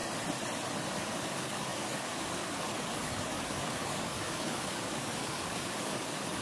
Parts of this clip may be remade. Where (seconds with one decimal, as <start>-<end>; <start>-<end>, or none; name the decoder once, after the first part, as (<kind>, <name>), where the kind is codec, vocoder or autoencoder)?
1.0-6.4 (codec, DAC)